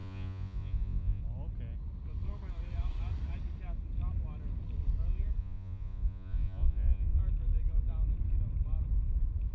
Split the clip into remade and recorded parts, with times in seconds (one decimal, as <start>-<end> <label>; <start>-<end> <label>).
0.0-1.2 remade; 1.2-5.4 recorded; 5.4-7.2 remade; 7.2-9.5 recorded